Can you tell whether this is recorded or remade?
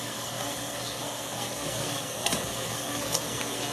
remade